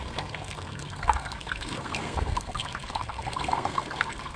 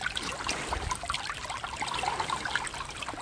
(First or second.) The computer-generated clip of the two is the first